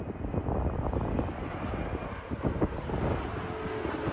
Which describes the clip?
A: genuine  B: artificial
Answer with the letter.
A